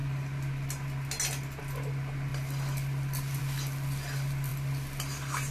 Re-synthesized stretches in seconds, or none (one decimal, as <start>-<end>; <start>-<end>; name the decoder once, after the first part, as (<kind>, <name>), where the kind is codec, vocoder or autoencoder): none